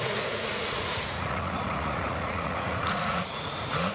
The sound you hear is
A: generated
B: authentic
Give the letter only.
A